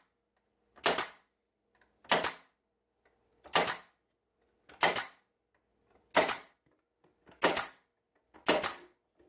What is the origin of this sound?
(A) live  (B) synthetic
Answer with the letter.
A